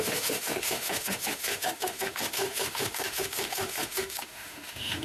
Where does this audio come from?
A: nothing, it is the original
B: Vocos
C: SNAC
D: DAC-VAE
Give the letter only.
D